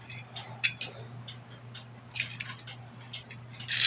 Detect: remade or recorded remade